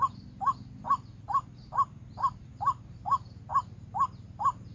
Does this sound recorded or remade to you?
recorded